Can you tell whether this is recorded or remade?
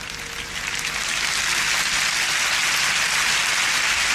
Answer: recorded